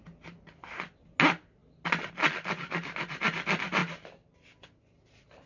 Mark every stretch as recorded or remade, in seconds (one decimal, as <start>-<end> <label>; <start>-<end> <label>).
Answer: 0.0-5.5 recorded